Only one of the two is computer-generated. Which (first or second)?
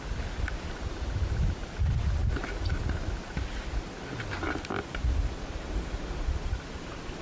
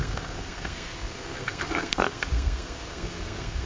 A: second